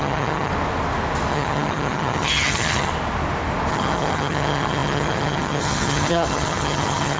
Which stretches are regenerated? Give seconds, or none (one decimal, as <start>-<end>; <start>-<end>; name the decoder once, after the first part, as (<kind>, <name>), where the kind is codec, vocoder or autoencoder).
0.0-0.5 (vocoder, HiFi-GAN); 1.3-2.9; 3.7-7.2